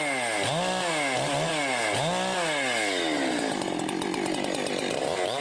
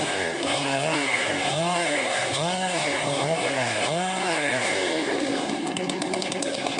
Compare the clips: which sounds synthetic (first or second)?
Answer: second